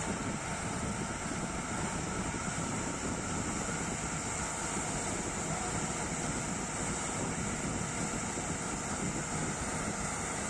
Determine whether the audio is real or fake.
real